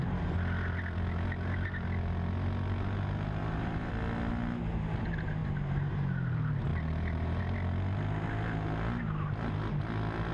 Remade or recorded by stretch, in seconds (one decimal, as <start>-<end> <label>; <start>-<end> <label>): 0.0-3.4 recorded; 3.4-3.9 remade; 3.9-5.4 recorded; 5.4-6.0 remade; 6.0-6.7 recorded; 6.7-7.4 remade; 7.4-10.3 recorded